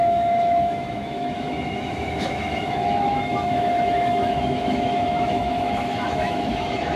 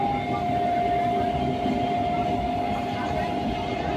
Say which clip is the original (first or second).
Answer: second